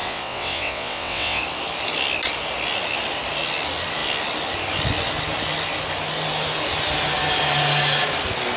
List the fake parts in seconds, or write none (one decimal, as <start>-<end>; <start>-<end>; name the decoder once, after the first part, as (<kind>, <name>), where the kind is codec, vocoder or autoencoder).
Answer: 0.0-1.4 (vocoder, WaveNeXt)